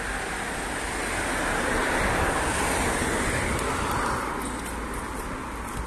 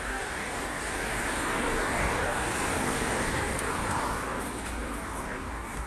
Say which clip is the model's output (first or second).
second